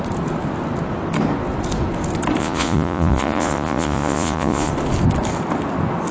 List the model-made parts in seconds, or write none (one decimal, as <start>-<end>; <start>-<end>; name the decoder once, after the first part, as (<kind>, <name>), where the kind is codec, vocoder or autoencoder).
2.4-4.7 (vocoder, Vocos)

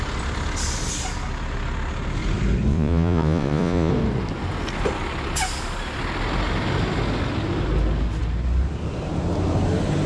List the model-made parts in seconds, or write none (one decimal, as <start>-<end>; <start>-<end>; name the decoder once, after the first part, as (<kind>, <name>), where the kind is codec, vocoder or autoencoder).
2.7-3.9 (vocoder, Vocos)

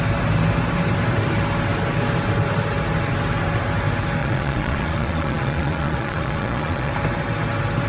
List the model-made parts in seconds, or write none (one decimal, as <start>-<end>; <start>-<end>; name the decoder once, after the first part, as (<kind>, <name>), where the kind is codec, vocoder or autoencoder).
4.2-6.9 (vocoder, Vocos)

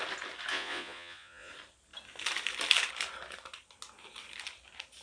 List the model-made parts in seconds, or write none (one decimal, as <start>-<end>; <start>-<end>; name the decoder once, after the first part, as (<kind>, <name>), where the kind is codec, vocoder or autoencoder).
0.5-1.5 (vocoder, Vocos)